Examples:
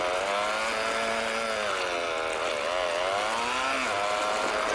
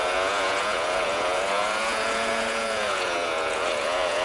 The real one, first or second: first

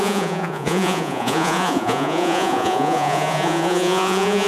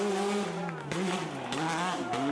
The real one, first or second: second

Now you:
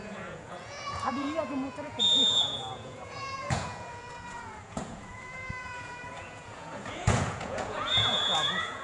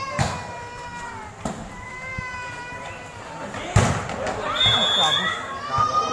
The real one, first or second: second